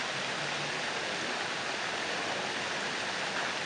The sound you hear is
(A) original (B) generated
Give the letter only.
A